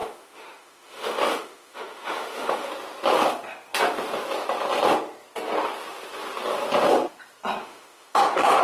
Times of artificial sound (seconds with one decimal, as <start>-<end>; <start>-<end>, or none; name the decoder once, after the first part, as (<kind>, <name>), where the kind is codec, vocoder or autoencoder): 0.0-2.7 (autoencoder, DAC-VAE); 7.6-8.6